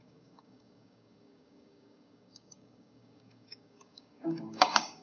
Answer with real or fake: fake